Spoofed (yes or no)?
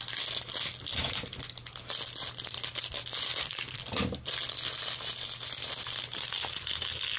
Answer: no